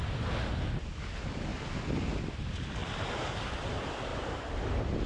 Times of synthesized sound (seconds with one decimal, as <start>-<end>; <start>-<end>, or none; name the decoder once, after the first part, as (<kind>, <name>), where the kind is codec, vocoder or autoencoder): 1.5-2.2 (vocoder, BigVGAN v2); 2.8-3.5; 4.1-5.1

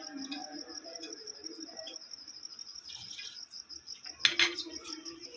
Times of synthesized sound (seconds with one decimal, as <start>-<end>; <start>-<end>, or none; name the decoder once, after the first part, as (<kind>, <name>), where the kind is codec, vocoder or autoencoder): 0.4-2.3 (vocoder, BigVGAN v2); 2.7-3.7; 4.5-5.4

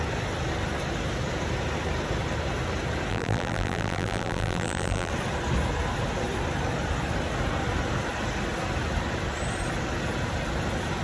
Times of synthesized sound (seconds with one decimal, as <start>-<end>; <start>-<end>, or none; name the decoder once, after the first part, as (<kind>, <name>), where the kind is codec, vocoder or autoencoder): 3.1-5.1 (vocoder, BigVGAN v2)

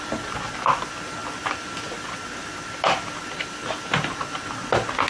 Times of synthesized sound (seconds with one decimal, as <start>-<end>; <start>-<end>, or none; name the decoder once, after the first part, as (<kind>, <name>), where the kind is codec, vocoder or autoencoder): 1.2-1.7 (vocoder, BigVGAN v2)

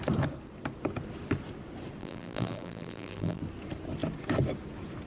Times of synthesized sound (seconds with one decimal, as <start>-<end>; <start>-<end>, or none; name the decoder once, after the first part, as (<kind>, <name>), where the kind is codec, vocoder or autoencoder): 2.0-3.4 (vocoder, BigVGAN v2)